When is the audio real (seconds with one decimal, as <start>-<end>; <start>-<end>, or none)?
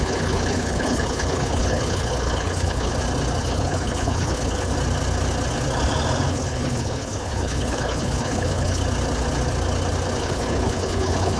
2.9-3.4; 4.7-6.3; 8.8-10.2